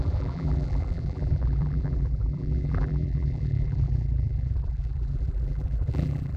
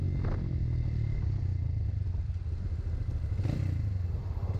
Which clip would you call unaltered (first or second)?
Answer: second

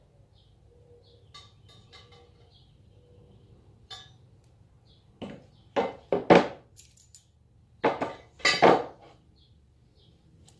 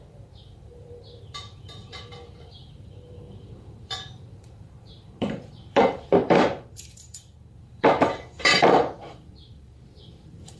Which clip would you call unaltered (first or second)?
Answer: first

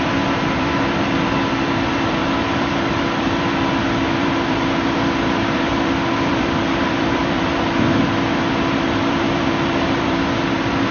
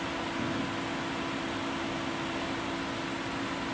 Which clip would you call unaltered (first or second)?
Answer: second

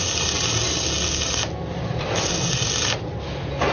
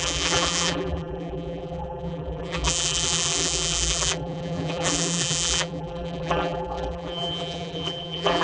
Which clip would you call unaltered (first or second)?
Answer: first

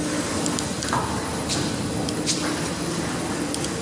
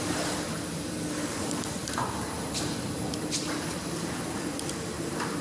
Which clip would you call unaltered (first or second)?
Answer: first